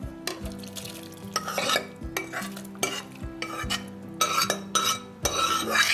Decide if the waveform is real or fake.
real